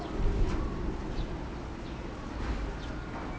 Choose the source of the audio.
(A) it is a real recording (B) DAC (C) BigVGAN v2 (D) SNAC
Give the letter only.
A